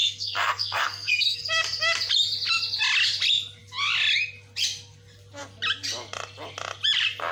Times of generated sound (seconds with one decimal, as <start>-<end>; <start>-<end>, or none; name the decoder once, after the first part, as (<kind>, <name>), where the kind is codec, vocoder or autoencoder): 0.0-1.4 (codec, SNAC)